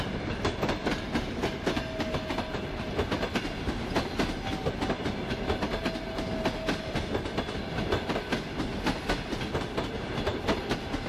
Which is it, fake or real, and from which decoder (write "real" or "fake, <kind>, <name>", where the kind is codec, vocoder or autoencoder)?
real